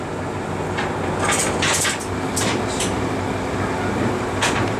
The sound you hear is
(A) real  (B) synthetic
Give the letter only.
A